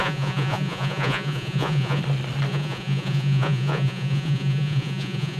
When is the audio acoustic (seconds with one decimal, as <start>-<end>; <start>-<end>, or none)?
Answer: 2.0-2.5